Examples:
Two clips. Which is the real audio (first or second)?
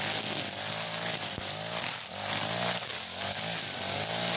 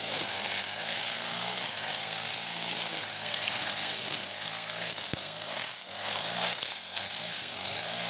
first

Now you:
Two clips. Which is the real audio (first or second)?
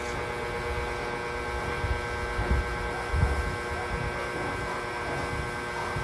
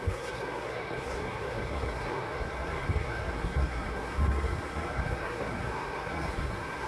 first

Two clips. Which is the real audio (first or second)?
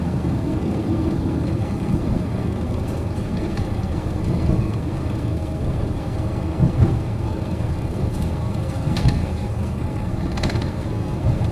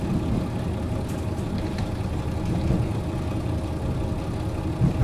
second